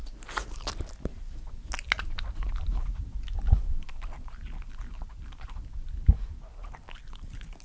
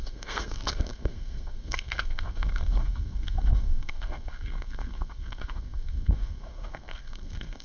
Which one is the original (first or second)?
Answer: first